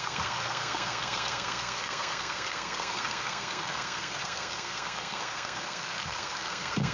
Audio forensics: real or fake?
fake